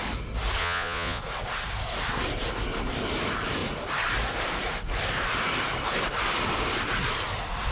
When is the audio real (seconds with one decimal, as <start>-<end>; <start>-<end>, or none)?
0.0-0.6; 1.2-7.7